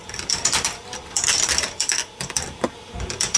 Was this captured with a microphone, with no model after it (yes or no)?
no